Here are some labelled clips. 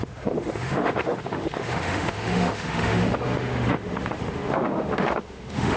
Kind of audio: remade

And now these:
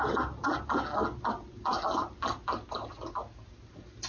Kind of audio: recorded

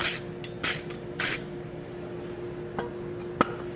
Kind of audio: recorded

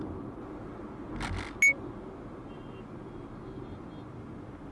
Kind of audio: recorded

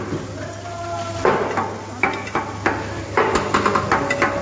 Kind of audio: recorded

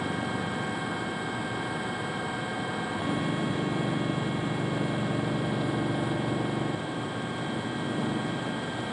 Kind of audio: recorded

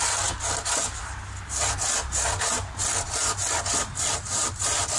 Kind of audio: recorded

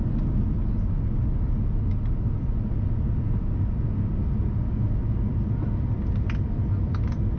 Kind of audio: recorded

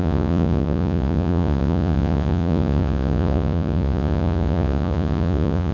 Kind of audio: remade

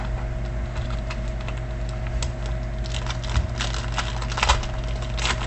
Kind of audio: recorded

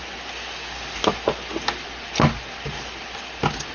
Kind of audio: recorded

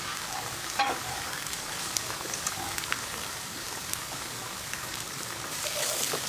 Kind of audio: remade